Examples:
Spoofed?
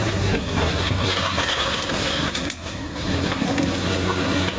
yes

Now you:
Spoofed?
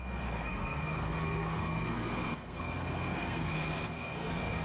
yes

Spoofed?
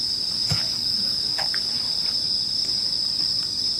no